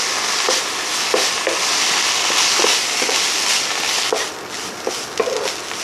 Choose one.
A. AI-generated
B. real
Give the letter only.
B